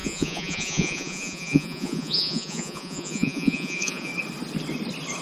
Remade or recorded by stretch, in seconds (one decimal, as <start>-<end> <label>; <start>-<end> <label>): 0.0-4.1 remade; 4.1-5.2 recorded